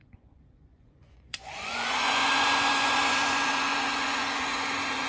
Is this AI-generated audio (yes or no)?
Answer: yes